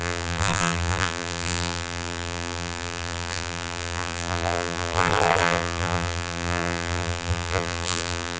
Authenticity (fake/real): fake